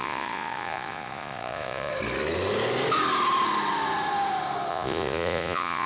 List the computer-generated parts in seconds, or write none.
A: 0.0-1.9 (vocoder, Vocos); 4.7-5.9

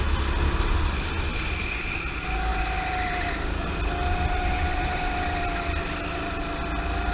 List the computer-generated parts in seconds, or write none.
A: none

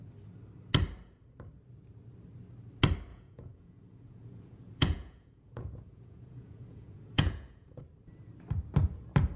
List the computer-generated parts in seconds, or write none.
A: 3.1-7.8 (vocoder, Vocos)

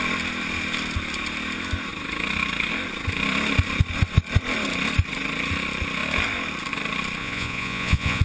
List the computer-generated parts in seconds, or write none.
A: 7.2-8.2 (vocoder, Vocos)